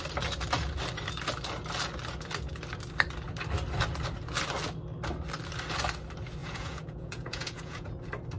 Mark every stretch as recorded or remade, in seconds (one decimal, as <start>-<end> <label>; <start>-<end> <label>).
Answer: 0.0-6.4 recorded; 6.4-7.9 remade; 7.9-8.4 recorded